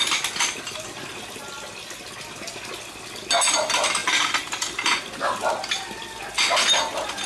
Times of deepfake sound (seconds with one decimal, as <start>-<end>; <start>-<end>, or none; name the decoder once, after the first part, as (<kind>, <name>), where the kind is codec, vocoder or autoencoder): none